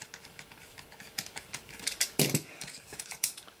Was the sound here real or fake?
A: fake